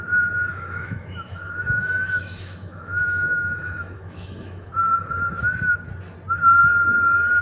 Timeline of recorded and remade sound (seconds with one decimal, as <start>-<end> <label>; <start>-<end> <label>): 0.0-0.5 recorded; 0.5-4.7 remade; 4.7-7.4 recorded